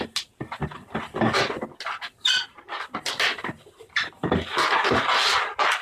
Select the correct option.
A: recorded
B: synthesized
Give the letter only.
A